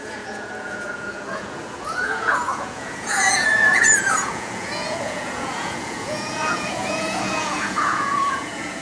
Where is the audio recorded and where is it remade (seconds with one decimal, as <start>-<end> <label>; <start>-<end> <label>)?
0.0-8.8 remade